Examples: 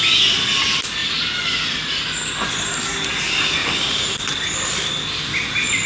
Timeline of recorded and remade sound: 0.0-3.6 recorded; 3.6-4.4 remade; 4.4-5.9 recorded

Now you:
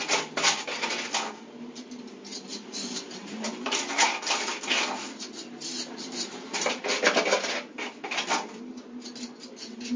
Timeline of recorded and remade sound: 0.0-2.3 recorded; 2.3-4.5 remade; 4.5-5.6 recorded; 5.6-6.8 remade; 6.8-10.0 recorded

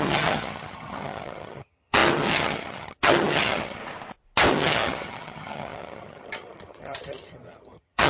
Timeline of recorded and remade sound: 0.0-3.8 remade; 3.8-4.5 recorded; 4.5-8.1 remade